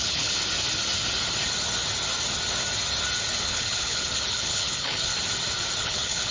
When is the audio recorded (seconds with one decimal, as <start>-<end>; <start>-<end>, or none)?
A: 0.4-3.5; 5.1-5.8